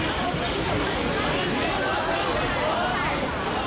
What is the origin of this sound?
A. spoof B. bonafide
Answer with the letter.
B